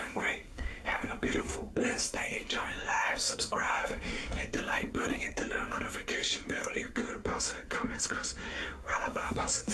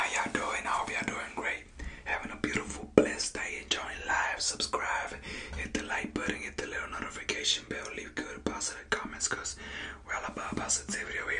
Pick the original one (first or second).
second